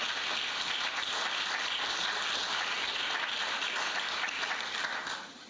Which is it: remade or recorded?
recorded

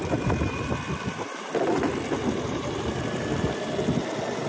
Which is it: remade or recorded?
recorded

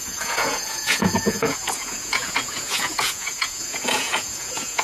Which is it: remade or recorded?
remade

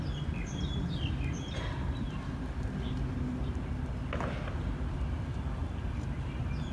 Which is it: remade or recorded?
recorded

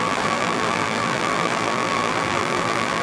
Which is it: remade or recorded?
remade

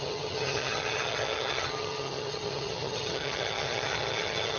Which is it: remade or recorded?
remade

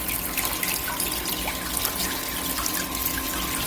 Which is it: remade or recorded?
recorded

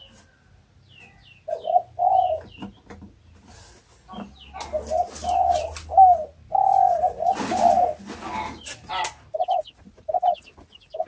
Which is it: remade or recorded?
recorded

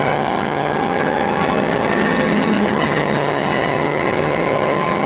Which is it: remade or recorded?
remade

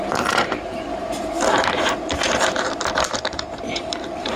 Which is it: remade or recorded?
remade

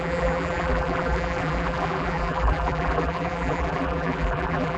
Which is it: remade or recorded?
remade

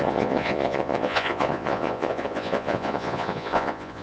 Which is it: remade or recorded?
remade